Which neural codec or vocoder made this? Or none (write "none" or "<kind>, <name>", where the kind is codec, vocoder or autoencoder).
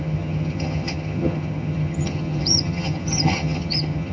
vocoder, HiFi-GAN